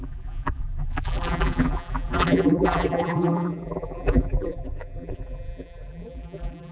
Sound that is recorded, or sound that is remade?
remade